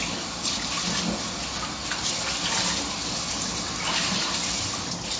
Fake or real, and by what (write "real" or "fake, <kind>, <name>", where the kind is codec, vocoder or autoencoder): real